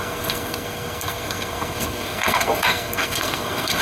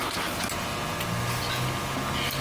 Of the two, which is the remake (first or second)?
first